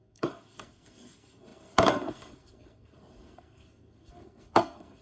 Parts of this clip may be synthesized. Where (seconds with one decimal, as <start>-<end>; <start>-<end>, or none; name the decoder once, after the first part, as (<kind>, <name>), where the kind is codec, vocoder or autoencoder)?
0.0-5.0 (codec, SNAC)